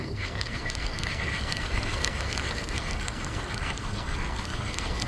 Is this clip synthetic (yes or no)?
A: yes